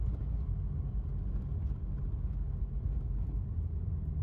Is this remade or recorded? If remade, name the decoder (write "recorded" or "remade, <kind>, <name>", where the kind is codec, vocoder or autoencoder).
recorded